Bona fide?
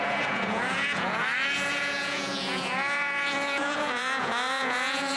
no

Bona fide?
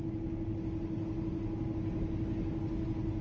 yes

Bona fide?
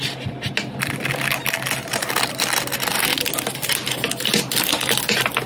yes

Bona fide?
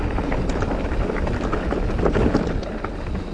yes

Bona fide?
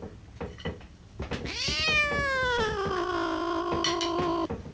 yes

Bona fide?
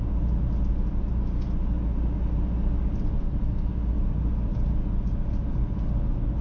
yes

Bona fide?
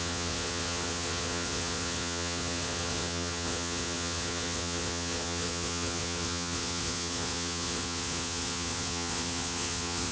no